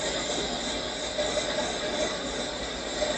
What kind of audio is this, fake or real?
real